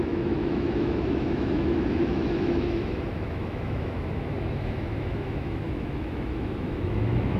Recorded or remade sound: remade